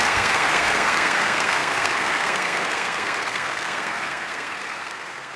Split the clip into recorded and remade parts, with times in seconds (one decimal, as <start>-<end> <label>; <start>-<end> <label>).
0.0-5.4 remade